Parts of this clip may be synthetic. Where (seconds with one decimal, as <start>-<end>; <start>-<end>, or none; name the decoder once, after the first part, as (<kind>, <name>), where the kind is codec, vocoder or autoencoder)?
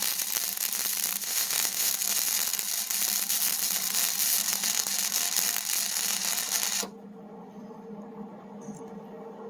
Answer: 1.2-1.9 (autoencoder, DAC-VAE)